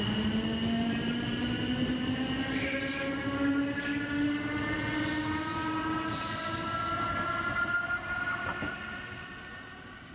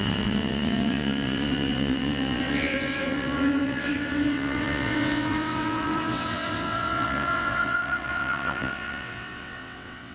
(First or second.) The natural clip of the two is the first